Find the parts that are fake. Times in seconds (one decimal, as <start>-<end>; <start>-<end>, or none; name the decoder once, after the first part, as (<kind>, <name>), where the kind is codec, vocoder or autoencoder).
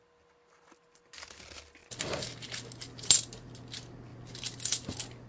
none